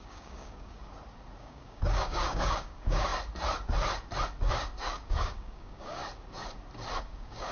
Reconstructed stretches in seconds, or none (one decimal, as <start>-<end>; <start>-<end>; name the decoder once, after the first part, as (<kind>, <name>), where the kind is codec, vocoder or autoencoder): 0.0-0.9 (codec, DAC); 1.4-3.1; 4.8-6.0; 7.0-7.5